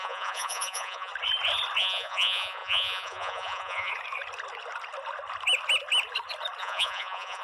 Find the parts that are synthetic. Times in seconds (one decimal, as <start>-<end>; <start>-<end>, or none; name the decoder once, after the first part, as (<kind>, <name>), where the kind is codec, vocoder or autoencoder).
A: 0.0-1.1 (vocoder, Vocos); 1.8-3.9; 6.6-7.4